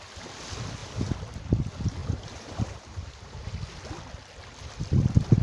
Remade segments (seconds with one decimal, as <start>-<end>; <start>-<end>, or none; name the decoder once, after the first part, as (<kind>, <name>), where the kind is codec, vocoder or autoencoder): 0.8-1.5 (vocoder, BigVGAN v2); 2.0-3.4